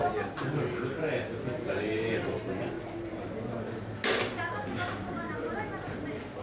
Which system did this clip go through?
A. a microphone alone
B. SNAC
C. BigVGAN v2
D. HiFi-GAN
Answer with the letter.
A